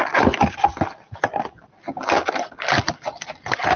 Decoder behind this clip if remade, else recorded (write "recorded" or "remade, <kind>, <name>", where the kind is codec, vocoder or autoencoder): recorded